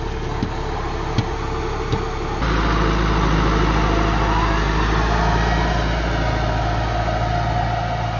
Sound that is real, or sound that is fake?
real